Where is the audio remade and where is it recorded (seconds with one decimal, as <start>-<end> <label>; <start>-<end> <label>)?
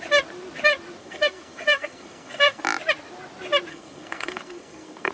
0.0-1.0 recorded; 1.0-2.6 remade; 2.6-3.7 recorded; 3.7-5.1 remade